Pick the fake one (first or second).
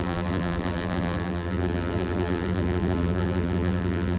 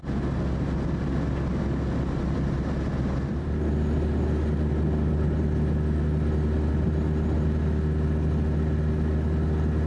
first